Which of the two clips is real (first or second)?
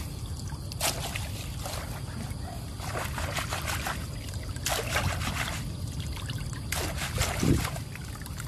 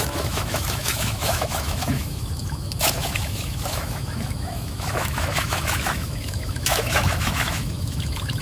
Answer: first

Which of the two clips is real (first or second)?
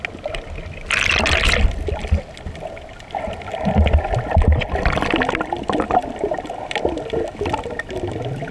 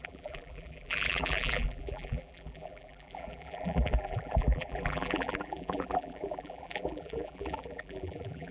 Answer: first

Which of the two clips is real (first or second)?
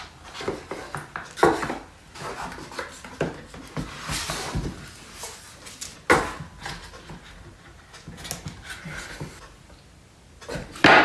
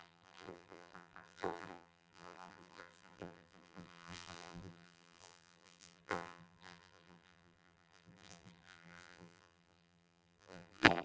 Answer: first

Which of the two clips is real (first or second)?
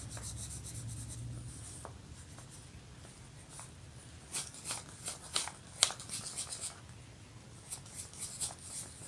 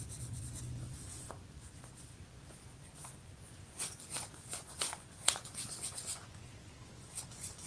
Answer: first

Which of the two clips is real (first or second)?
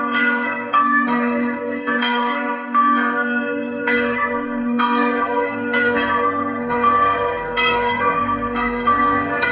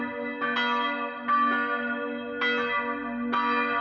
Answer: second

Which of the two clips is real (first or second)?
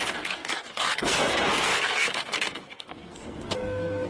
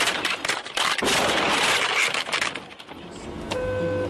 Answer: second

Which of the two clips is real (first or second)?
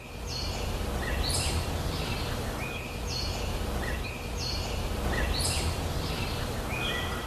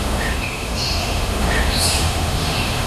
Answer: first